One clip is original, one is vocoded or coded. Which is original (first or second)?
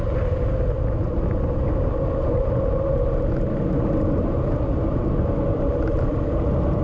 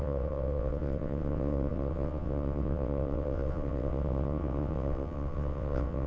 first